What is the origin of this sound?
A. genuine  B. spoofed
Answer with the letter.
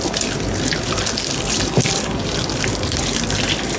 A